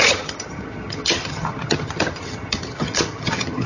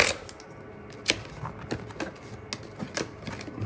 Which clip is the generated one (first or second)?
first